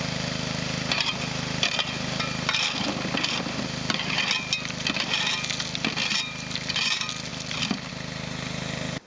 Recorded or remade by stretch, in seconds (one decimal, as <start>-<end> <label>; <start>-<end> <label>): 0.0-9.1 recorded

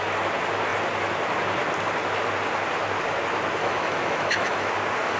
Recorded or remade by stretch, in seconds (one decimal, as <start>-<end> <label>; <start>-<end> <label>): 0.0-3.6 recorded; 3.6-4.7 remade; 4.7-5.2 recorded

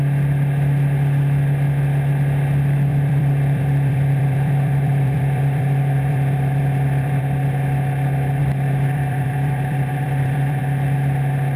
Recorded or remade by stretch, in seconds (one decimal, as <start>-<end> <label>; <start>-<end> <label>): 0.0-2.9 recorded; 2.9-7.2 remade; 7.2-8.4 recorded; 8.4-10.6 remade; 10.6-11.6 recorded

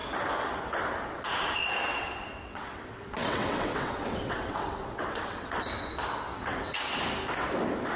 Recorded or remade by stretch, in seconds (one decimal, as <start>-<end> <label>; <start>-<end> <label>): 0.0-1.9 recorded; 1.9-5.6 remade; 5.6-6.3 recorded; 6.3-6.9 remade; 6.9-8.0 recorded